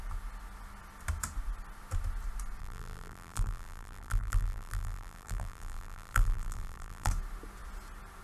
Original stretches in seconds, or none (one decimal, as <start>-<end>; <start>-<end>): 0.0-2.6; 7.1-8.2